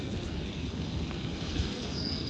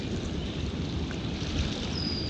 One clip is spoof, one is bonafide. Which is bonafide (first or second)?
second